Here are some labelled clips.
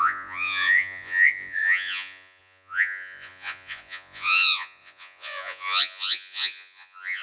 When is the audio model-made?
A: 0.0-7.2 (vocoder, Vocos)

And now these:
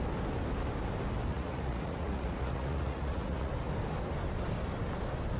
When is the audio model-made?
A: 1.3-3.5 (vocoder, Vocos)

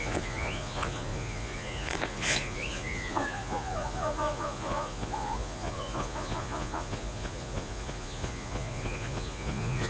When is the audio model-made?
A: 0.0-9.9 (vocoder, Vocos)

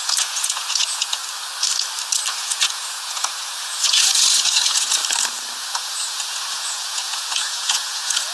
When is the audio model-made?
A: 0.0-1.2 (vocoder, Vocos); 2.3-5.0; 5.6-8.3

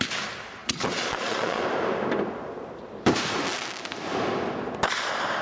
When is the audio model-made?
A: 0.6-1.6 (vocoder, Vocos)

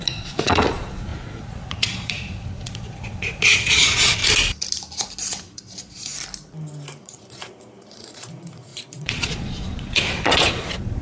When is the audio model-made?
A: 0.0-4.2 (vocoder, Vocos); 5.2-6.1; 7.0-11.0

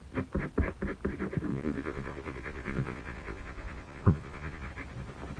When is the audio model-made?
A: 1.5-4.7 (vocoder, Vocos)

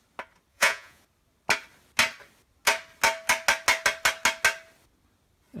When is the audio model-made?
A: 0.5-1.0 (vocoder, Vocos)